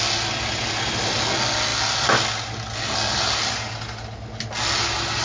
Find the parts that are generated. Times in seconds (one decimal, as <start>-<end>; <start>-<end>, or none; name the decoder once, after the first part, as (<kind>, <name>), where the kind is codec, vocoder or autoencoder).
none